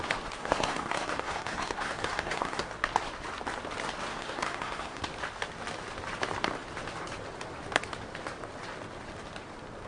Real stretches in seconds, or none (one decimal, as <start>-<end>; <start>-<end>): 0.0-0.4; 2.7-4.1; 5.0-9.9

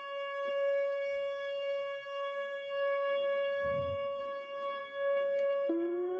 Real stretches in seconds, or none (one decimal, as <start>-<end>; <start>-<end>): 0.0-0.5; 4.2-4.8

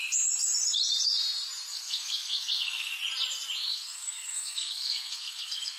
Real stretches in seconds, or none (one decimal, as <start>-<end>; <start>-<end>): 0.0-1.7; 2.9-3.7

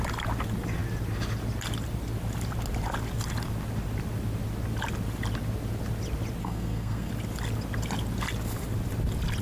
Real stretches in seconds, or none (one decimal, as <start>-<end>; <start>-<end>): 0.0-6.4; 7.1-9.4

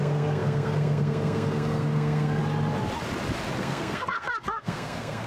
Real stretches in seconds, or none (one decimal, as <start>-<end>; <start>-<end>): 2.4-3.6